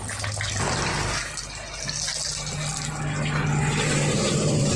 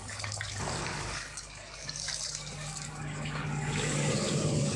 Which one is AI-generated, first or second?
second